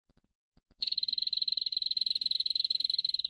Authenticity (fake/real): fake